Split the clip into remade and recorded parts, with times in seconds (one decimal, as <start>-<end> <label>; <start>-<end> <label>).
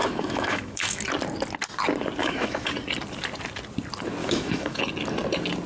0.0-1.0 remade; 1.0-2.2 recorded; 2.2-2.7 remade; 2.7-4.2 recorded; 4.2-4.8 remade; 4.8-5.7 recorded